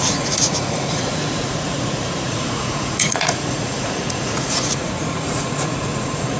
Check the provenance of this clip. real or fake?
fake